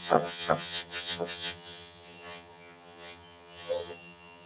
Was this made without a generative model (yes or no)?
no